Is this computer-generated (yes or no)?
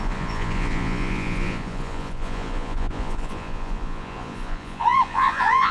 yes